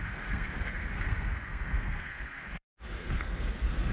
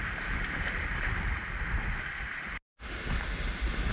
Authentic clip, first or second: second